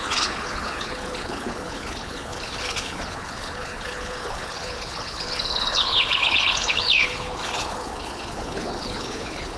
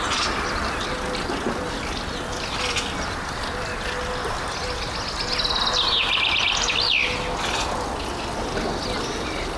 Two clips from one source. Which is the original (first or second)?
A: second